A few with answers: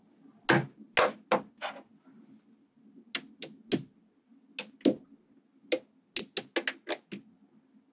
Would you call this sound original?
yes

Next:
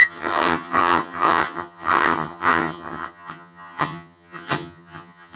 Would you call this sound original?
no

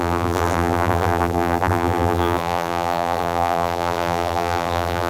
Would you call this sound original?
no